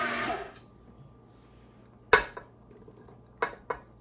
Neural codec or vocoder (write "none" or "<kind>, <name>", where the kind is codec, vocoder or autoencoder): none